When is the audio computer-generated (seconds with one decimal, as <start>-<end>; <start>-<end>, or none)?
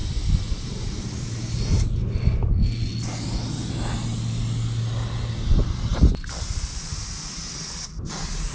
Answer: none